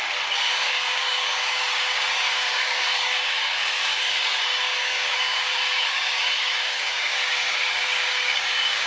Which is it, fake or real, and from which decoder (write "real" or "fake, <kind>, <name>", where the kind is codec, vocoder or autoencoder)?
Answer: fake, codec, DAC